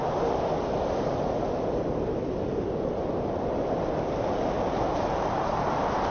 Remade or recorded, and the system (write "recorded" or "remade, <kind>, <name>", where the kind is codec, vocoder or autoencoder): recorded